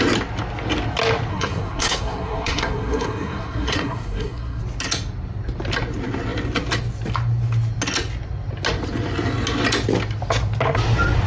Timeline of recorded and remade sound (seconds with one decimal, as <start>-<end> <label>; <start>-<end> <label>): 0.0-1.3 recorded; 1.3-4.6 remade; 4.6-11.3 recorded